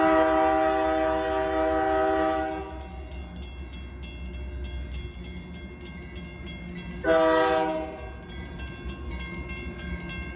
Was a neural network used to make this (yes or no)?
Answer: no